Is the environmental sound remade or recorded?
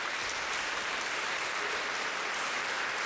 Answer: recorded